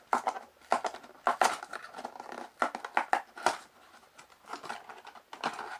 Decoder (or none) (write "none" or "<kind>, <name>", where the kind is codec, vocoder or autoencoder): none